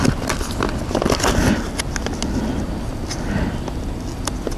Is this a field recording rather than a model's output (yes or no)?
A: yes